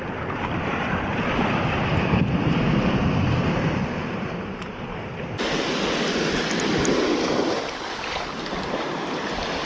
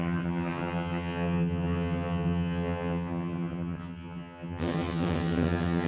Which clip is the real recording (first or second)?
first